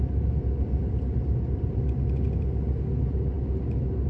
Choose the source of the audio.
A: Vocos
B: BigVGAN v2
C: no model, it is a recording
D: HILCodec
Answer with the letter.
C